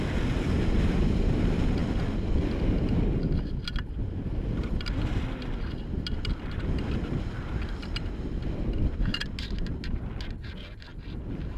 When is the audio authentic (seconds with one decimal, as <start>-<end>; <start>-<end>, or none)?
0.0-11.6